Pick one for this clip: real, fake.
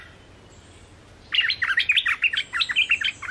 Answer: real